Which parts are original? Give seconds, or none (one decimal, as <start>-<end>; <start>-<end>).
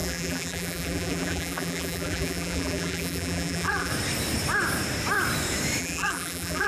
3.9-5.8